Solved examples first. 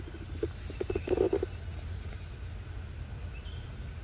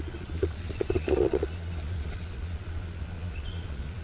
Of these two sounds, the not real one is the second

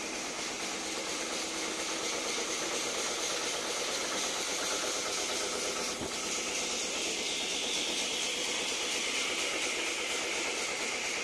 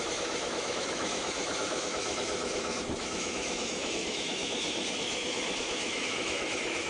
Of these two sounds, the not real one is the second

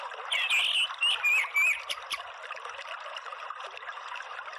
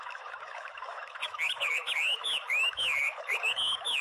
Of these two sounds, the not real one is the second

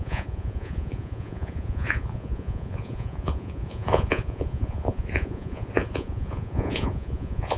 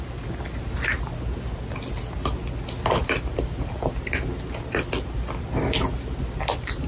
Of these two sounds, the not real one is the first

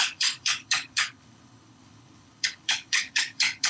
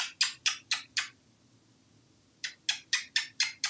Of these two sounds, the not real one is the first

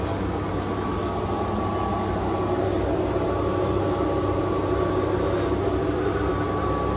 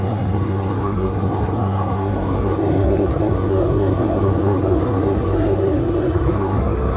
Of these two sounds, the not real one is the second